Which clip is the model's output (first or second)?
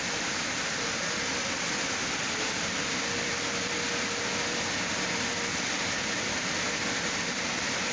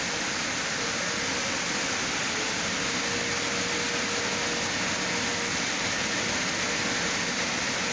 first